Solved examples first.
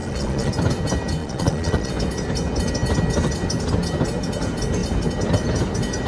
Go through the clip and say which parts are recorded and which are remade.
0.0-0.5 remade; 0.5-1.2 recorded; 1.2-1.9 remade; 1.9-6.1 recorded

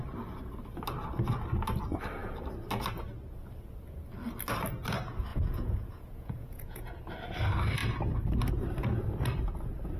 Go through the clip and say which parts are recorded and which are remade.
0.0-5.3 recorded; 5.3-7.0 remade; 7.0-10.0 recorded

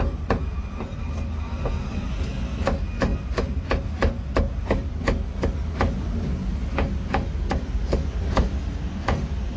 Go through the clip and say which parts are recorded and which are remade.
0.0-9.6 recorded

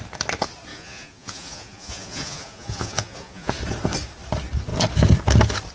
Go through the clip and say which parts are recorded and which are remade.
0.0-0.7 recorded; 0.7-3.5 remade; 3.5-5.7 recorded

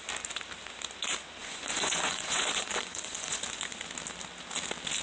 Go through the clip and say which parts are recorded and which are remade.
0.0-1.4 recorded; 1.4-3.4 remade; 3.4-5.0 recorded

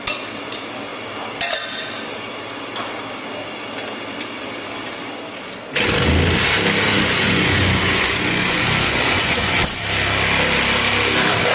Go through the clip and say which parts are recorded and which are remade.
0.0-6.9 recorded; 6.9-9.8 remade; 9.8-11.5 recorded

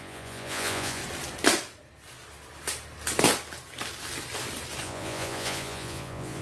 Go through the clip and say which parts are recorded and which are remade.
0.0-1.0 remade; 1.0-4.8 recorded; 4.8-6.4 remade